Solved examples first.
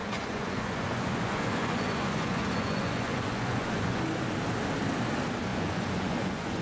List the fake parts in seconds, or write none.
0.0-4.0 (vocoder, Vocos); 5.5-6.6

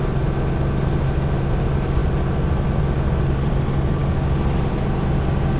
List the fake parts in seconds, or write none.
none

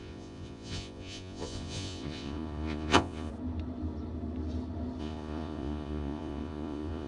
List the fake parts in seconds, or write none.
0.0-3.3 (vocoder, Vocos); 5.0-7.1